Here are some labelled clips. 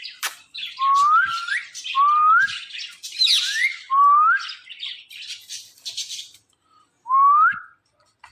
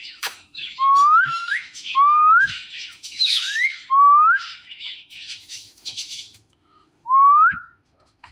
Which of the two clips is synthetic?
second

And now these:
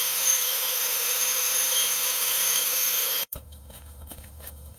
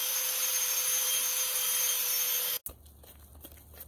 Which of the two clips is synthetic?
first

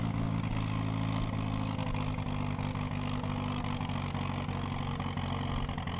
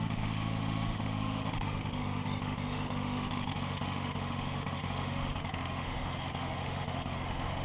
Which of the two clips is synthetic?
second